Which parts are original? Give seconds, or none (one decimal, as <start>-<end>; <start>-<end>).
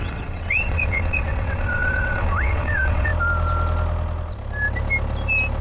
3.1-5.6